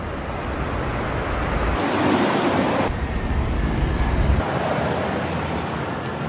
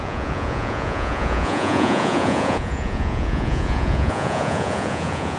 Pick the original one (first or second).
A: first